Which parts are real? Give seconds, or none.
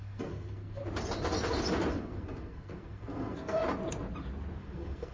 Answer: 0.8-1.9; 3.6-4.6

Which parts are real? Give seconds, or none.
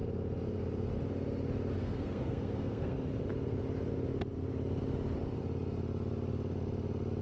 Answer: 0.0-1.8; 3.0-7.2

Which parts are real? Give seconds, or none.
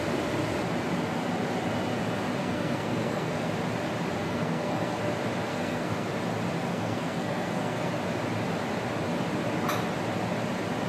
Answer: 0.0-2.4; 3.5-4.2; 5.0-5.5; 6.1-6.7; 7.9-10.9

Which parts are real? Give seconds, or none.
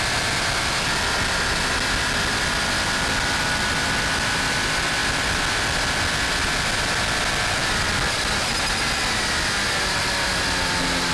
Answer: 0.0-11.1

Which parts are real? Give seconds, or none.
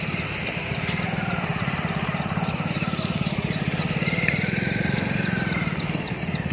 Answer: 0.0-6.5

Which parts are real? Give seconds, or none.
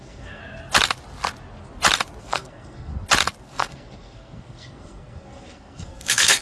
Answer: 0.4-2.2; 2.9-3.4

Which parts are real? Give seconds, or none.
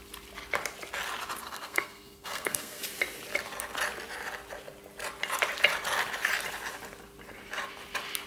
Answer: 0.0-1.4; 2.8-8.3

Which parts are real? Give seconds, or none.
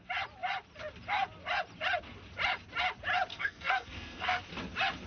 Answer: 0.0-3.3; 4.4-5.1